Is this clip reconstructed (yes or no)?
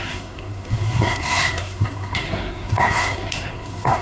yes